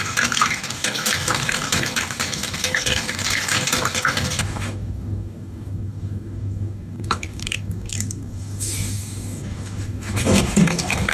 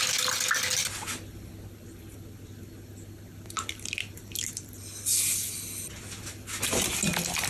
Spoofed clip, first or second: first